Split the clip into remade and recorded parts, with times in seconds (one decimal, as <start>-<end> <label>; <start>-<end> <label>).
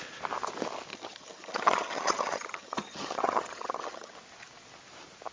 0.0-0.9 recorded; 0.9-4.1 remade; 4.1-5.3 recorded